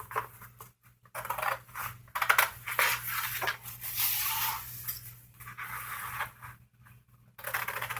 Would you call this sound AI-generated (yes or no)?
no